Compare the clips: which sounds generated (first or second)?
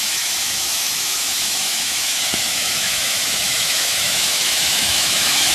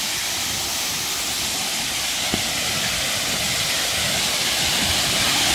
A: first